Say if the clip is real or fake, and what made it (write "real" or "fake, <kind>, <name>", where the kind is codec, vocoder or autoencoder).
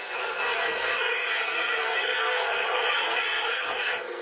fake, codec, SNAC